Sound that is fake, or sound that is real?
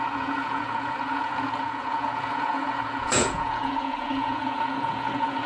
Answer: fake